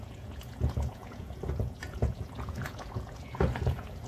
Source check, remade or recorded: remade